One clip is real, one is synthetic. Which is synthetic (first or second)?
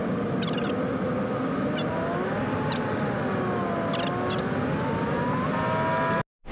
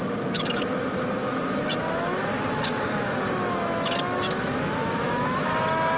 second